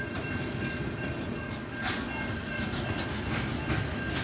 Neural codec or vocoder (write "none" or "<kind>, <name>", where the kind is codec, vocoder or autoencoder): none